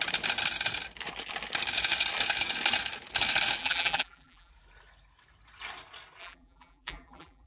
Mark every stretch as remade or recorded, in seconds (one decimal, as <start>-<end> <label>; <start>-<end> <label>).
0.0-3.6 recorded; 3.6-4.5 remade; 4.5-6.2 recorded; 6.2-7.5 remade